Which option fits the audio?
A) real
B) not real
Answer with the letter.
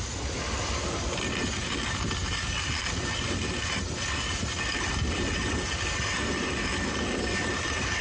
A